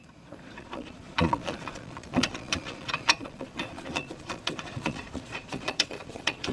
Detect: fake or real fake